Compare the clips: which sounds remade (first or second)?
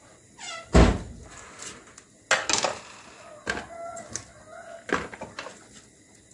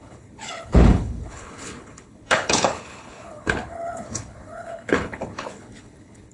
second